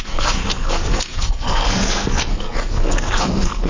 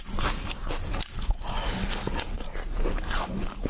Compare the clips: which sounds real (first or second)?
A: second